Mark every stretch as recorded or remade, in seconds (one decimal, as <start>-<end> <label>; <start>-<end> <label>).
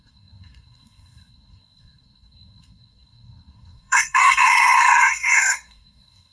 0.0-6.3 remade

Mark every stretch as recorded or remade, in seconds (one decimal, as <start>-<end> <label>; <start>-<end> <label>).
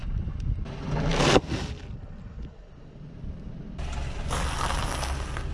0.0-1.1 recorded; 1.1-3.3 remade; 3.3-5.5 recorded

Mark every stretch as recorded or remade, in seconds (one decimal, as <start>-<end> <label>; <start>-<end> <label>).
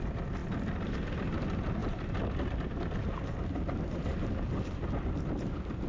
0.0-0.4 recorded; 0.4-0.9 remade; 0.9-5.9 recorded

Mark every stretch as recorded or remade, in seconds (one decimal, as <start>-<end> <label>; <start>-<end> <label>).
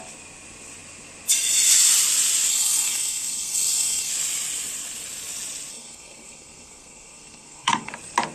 0.0-2.5 recorded; 2.5-4.1 remade; 4.1-5.7 recorded; 5.7-7.9 remade; 7.9-8.3 recorded